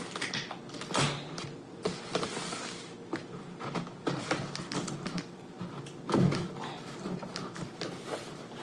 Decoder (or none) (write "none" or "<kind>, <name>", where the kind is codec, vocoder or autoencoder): none